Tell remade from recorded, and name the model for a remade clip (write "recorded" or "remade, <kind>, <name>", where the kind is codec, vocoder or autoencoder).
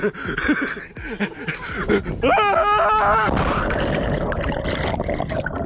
recorded